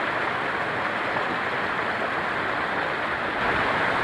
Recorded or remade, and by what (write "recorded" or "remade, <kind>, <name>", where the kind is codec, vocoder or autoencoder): recorded